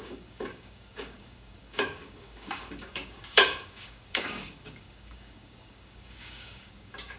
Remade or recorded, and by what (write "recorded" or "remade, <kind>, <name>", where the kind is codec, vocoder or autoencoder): remade, codec, DAC